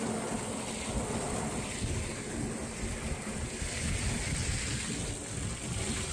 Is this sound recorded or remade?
recorded